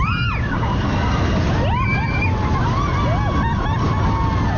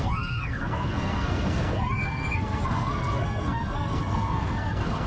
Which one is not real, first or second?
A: second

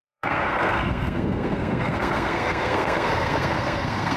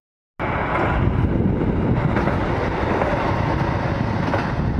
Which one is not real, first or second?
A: first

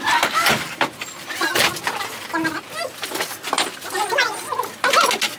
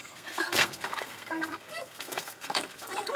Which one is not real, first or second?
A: second